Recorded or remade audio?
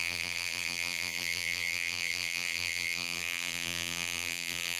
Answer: remade